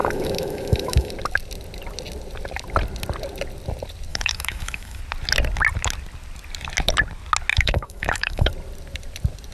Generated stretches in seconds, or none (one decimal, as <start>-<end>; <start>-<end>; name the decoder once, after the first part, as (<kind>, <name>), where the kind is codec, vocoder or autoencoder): 0.0-1.1 (autoencoder, DAC-VAE); 4.1-5.0; 7.5-8.5